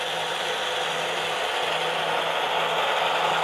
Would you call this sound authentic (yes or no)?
yes